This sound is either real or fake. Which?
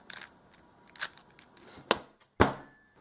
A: real